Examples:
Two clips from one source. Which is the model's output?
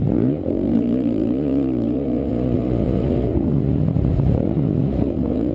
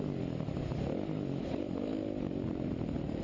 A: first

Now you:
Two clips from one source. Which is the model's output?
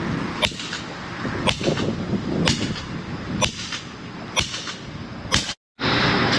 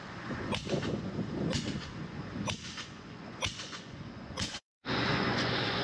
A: second